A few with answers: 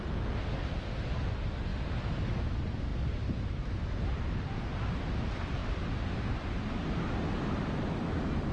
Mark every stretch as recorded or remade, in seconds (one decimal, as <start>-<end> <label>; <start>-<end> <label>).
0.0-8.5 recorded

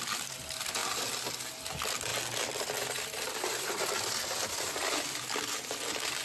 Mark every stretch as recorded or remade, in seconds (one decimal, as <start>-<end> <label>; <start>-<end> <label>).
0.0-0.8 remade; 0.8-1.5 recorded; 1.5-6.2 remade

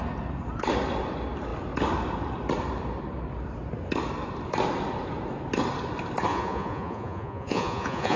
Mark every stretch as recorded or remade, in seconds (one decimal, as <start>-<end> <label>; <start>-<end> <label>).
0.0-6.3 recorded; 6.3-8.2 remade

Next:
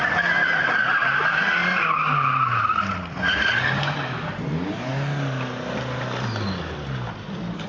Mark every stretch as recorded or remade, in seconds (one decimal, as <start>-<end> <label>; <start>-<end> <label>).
0.0-1.6 recorded; 1.6-3.2 remade; 3.2-7.7 recorded

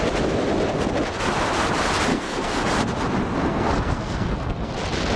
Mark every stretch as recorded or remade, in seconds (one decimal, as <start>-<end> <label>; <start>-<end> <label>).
0.0-2.1 recorded; 2.1-2.7 remade; 2.7-3.4 recorded; 3.4-4.7 remade; 4.7-5.2 recorded